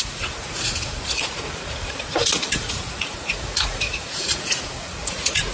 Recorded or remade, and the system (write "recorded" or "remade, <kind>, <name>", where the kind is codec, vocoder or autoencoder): remade, vocoder, Vocos